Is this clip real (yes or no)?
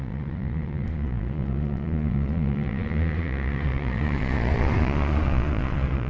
no